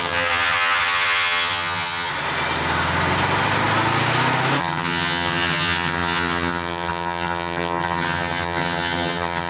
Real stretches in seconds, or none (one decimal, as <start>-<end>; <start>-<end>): 2.1-4.6